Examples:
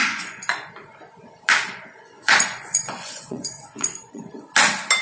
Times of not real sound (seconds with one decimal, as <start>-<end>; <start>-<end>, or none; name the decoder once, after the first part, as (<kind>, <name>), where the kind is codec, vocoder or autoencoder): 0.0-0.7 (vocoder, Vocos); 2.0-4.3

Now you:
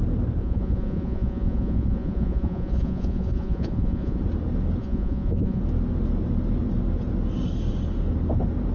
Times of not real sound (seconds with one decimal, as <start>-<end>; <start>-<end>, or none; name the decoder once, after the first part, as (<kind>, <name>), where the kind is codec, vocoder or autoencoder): 0.4-4.2 (vocoder, Vocos); 4.8-5.6

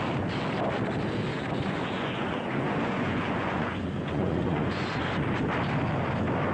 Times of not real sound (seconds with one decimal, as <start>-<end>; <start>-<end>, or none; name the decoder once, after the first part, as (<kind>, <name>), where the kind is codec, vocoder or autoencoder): 1.3-5.0 (vocoder, Vocos)